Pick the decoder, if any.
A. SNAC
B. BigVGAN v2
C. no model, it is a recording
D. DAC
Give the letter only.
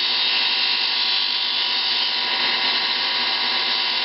C